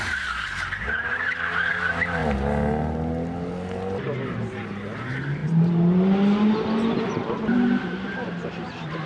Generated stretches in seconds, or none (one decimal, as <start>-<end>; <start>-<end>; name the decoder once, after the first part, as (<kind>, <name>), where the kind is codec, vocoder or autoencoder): 0.0-2.2 (vocoder, BigVGAN v2); 5.0-5.4; 6.9-9.1